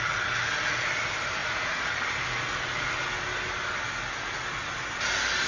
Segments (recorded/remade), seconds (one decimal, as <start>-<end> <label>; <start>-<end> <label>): 0.0-1.4 recorded; 1.4-1.9 remade; 1.9-5.5 recorded